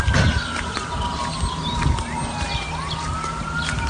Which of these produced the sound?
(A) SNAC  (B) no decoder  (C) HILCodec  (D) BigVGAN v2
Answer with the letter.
B